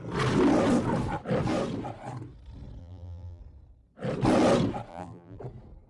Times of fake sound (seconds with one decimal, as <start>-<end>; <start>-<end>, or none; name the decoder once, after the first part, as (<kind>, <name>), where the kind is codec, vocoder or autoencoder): 2.8-3.4 (vocoder, BigVGAN v2); 4.9-5.4